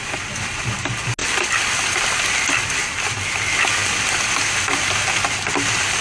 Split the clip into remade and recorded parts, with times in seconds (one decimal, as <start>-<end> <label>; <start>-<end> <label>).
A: 0.0-1.2 recorded; 1.2-2.2 remade; 2.2-2.8 recorded; 2.8-3.4 remade; 3.4-3.8 recorded; 3.8-4.8 remade; 4.8-6.0 recorded